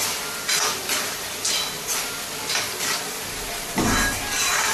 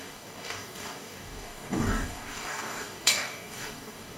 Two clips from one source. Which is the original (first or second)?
first